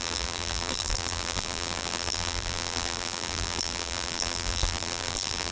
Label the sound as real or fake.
fake